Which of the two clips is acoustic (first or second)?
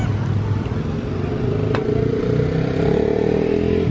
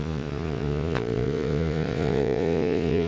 first